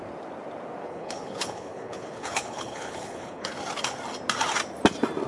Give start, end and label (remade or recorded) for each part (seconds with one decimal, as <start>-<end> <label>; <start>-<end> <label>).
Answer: 0.0-0.8 recorded; 0.8-3.5 remade; 3.5-5.3 recorded